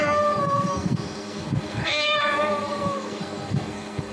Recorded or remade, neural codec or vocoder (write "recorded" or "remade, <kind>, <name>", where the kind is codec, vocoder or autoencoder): remade, codec, SNAC